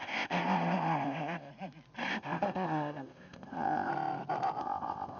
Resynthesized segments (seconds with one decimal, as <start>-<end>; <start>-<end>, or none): 0.0-1.5; 2.1-3.9; 4.6-5.2